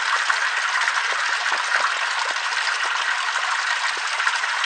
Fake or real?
real